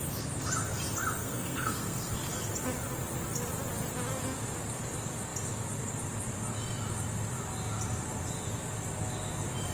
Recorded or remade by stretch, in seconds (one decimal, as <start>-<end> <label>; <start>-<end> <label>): 0.0-1.2 recorded; 1.2-2.2 remade; 2.2-9.7 recorded